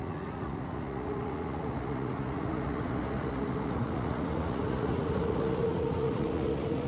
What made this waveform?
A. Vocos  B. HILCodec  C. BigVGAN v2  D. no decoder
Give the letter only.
A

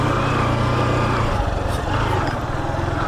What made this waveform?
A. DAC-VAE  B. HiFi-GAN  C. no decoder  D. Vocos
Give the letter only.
C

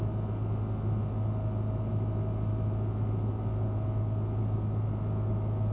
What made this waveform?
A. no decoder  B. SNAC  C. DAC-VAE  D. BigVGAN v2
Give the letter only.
A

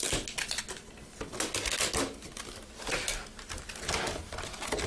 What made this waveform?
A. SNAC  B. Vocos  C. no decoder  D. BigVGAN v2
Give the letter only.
C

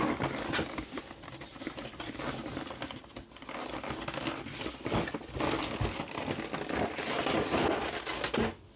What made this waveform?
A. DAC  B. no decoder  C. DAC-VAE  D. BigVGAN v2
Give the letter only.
B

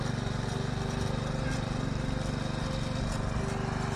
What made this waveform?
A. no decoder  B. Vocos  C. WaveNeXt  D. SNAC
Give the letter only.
A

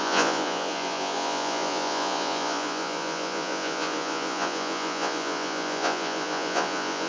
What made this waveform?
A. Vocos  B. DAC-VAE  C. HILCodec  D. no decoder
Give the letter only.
A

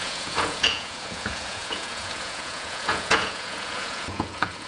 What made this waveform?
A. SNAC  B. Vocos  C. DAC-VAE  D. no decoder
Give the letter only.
B